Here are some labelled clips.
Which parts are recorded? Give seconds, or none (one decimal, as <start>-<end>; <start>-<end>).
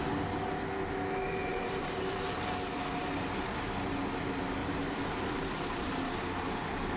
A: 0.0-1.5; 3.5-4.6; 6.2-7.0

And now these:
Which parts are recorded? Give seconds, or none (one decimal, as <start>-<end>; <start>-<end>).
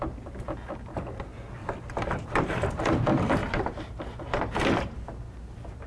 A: 0.0-1.6; 2.9-3.4; 4.0-5.9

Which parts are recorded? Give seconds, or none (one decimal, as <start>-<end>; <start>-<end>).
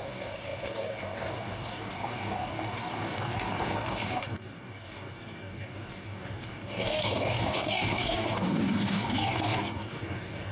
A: none